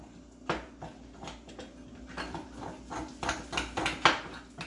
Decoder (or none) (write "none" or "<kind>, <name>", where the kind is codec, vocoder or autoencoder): none